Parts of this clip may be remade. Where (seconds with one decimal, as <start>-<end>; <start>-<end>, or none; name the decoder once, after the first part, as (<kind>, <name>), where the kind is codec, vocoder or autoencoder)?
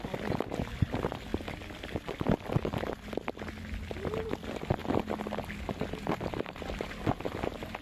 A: none